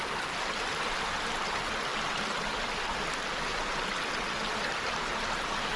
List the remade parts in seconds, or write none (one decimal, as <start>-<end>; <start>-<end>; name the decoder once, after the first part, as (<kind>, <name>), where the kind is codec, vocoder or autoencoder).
none